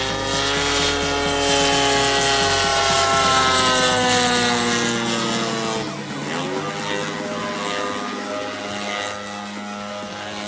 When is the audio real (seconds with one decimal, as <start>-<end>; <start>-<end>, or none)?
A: 0.0-2.7; 3.6-10.5